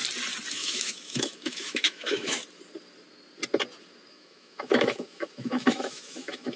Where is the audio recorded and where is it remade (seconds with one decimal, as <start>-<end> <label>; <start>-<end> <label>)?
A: 0.0-0.5 recorded; 0.5-2.4 remade; 2.4-4.1 recorded; 4.1-6.6 remade